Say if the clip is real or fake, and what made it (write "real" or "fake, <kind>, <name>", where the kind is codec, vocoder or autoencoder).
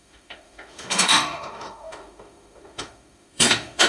fake, autoencoder, DAC-VAE